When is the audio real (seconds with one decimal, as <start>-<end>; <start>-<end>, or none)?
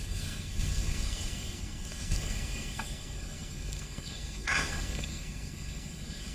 none